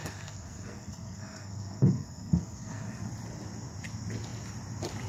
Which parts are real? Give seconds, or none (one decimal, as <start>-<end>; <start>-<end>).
3.1-5.1